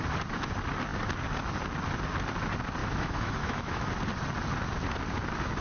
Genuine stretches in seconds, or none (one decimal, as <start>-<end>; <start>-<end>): 0.0-2.8; 3.9-5.6